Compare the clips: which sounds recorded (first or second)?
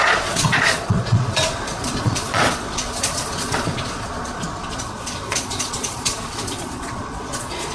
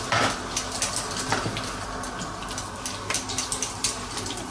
second